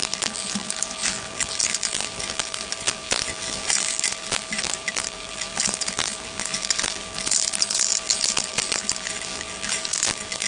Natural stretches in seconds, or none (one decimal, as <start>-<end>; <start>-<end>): none